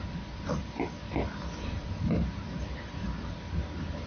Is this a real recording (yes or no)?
yes